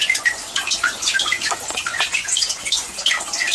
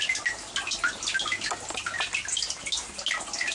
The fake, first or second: first